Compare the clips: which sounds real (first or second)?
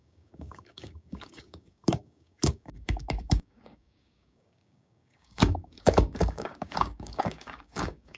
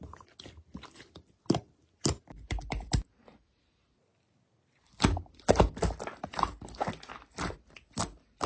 second